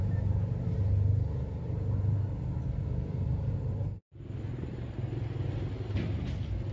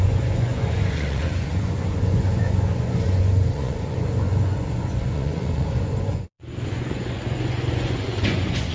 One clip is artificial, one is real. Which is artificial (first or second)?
second